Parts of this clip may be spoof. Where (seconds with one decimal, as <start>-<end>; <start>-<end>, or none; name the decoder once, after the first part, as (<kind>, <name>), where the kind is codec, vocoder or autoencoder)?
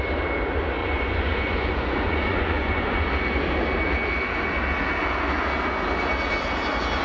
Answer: 0.8-3.1 (vocoder, Vocos)